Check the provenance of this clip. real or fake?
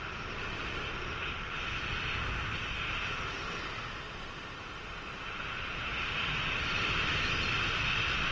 real